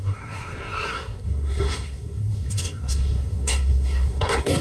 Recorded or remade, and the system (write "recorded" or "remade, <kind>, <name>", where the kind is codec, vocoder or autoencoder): remade, codec, SNAC